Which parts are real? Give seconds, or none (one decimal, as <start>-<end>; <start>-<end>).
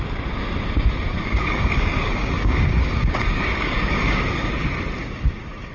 0.0-1.1; 4.5-5.0